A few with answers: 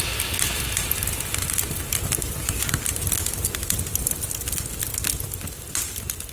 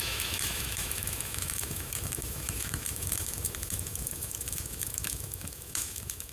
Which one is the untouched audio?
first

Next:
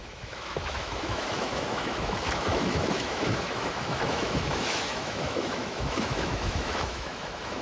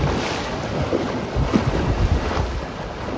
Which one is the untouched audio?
second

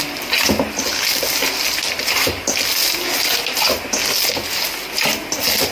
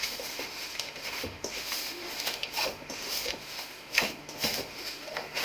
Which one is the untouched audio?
first